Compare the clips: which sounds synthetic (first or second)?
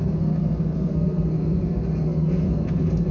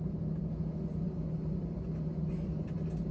first